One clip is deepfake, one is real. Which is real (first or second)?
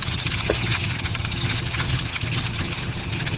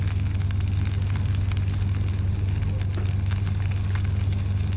second